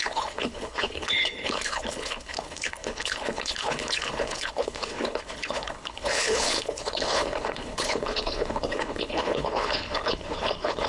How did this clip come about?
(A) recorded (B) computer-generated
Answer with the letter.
B